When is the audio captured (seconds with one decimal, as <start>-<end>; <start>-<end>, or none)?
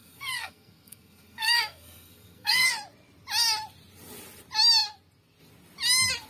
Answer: 2.7-6.3